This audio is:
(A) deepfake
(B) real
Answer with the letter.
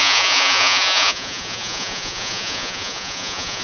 A